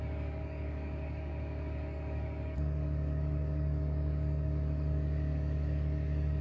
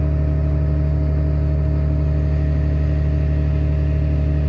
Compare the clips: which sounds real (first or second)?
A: second